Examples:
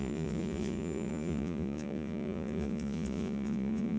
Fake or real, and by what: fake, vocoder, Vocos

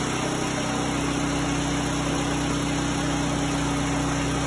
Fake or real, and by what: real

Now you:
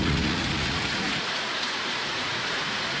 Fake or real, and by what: fake, vocoder, Vocos